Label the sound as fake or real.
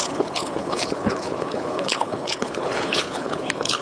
fake